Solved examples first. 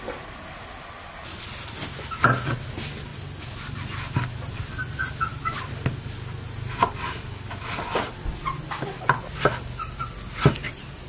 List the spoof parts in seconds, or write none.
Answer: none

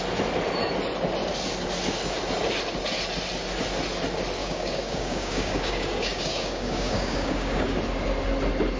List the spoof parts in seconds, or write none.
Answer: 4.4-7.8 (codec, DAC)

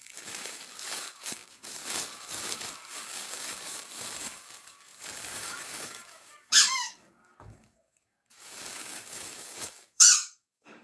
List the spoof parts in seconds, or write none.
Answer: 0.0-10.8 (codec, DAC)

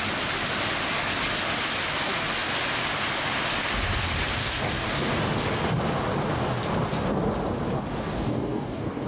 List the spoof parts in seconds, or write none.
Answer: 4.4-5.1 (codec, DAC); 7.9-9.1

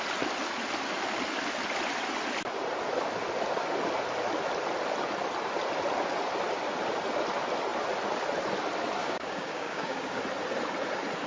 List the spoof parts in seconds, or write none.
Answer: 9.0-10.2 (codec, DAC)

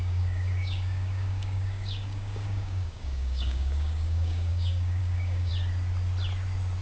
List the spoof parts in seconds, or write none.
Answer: 0.0-5.5 (codec, DAC)

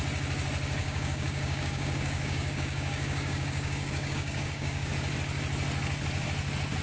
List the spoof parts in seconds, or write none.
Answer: 0.8-4.9 (codec, DAC)

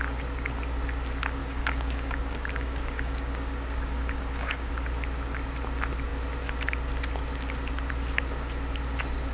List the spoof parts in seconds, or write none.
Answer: 1.4-4.7 (codec, DAC)